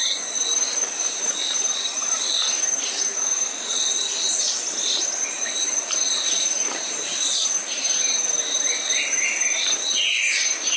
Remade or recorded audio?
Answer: remade